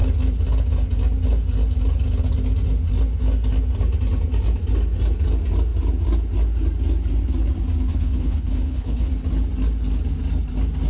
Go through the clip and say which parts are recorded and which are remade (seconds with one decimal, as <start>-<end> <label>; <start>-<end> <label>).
0.0-7.9 recorded; 7.9-9.1 remade; 9.1-10.9 recorded